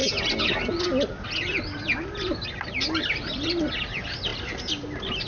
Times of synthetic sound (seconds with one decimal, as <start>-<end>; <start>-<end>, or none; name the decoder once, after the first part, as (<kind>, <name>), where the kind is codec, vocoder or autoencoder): none